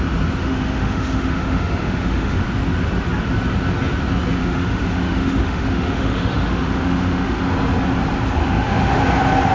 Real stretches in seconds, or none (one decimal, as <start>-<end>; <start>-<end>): 0.0-0.4; 2.4-4.4; 7.4-8.4; 9.0-9.5